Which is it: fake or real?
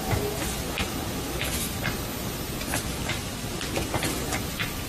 real